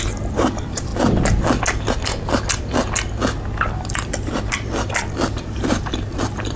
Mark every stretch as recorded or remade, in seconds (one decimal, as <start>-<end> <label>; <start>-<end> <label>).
0.0-0.9 remade; 0.9-3.9 recorded; 3.9-6.6 remade